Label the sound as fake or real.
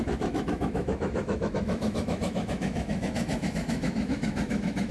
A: fake